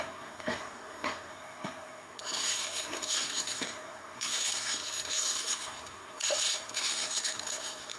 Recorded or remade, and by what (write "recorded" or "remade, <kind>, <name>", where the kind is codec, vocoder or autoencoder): remade, codec, SNAC